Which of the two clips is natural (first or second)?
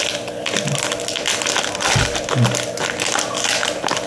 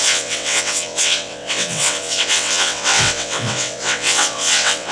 first